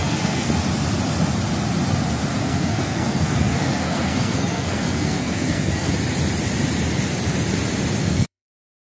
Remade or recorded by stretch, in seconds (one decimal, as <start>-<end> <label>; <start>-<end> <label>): 0.0-0.5 remade; 0.5-2.3 recorded; 2.3-5.9 remade; 5.9-8.0 recorded; 8.0-8.9 remade